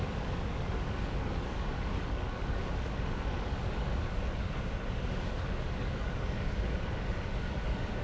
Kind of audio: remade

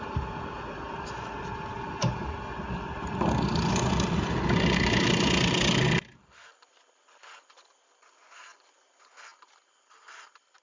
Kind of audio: recorded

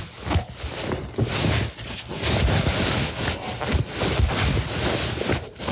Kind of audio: recorded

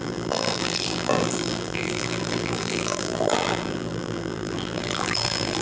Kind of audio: remade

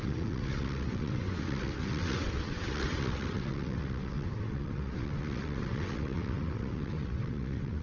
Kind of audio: remade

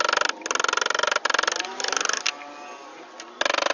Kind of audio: recorded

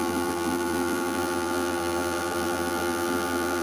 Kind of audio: remade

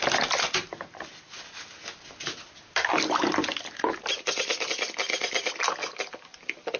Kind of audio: recorded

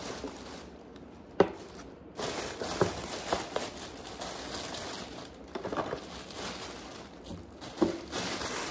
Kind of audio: recorded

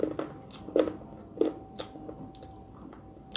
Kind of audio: recorded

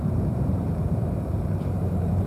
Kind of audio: remade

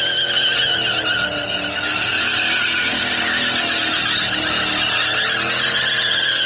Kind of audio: recorded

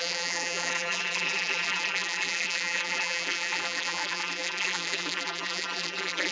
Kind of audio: remade